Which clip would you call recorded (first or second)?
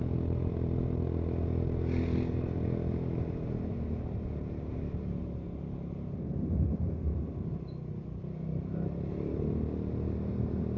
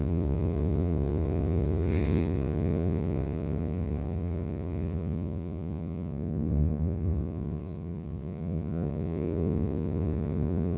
first